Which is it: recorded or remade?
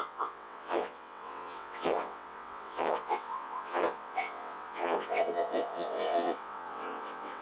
remade